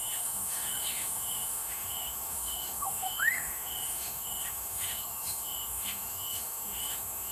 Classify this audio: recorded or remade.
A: remade